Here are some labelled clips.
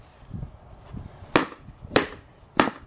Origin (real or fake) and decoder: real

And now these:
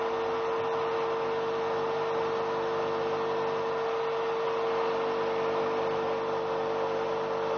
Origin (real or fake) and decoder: real